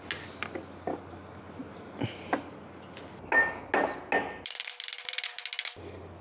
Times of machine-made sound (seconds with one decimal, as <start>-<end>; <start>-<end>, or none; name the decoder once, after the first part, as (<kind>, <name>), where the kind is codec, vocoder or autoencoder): none